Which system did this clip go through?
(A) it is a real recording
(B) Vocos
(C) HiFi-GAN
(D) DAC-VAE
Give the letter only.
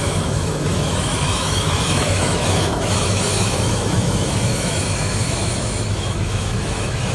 D